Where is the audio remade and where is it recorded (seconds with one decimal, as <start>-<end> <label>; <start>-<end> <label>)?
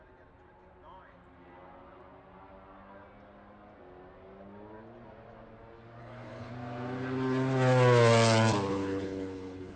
0.0-6.0 recorded; 6.0-6.5 remade; 6.5-8.7 recorded; 8.7-9.8 remade